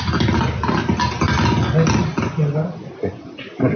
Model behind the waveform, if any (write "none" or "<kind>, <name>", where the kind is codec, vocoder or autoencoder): none